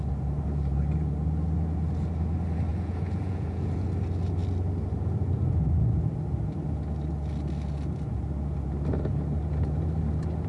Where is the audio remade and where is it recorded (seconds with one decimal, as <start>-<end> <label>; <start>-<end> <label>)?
0.0-2.7 recorded; 2.7-3.9 remade; 3.9-10.5 recorded